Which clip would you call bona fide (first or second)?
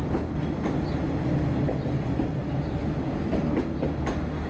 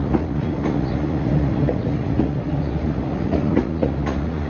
first